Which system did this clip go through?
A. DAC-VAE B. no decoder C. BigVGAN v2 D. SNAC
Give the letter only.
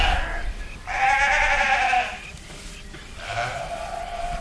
B